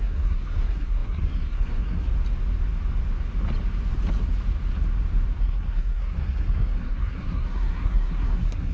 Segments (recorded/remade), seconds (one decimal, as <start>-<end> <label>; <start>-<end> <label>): 0.0-2.1 remade; 2.1-5.4 recorded; 5.4-8.7 remade